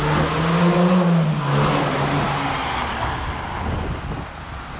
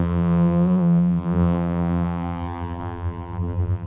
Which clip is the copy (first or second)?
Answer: second